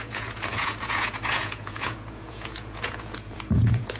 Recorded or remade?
remade